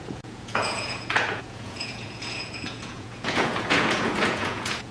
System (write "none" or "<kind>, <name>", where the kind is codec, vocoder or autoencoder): vocoder, Vocos